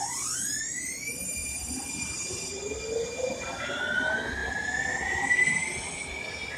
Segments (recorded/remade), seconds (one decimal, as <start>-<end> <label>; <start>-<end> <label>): 0.0-1.4 recorded; 1.4-2.5 remade; 2.5-6.6 recorded